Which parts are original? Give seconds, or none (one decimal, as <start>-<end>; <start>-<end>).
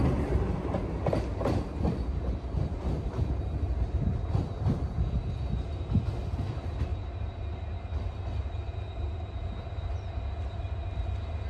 0.0-11.5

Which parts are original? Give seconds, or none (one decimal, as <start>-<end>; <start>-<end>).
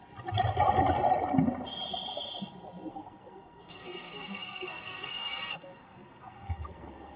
0.0-2.9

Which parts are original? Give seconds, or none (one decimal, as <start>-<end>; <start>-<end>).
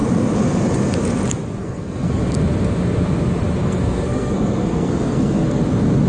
0.0-1.6; 2.2-3.6; 5.6-6.1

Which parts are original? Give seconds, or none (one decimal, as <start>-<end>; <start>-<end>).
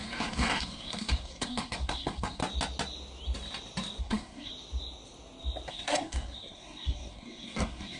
2.4-4.0; 4.5-5.7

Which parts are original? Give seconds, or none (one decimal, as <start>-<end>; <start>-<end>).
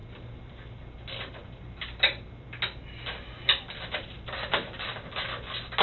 0.0-5.8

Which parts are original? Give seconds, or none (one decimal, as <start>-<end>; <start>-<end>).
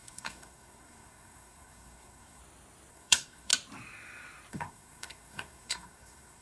2.4-2.9; 3.5-4.5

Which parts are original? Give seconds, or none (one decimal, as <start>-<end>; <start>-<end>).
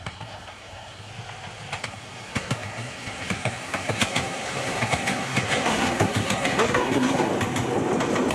1.1-1.8; 7.3-8.3